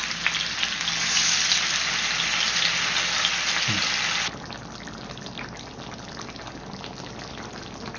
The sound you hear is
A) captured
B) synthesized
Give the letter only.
A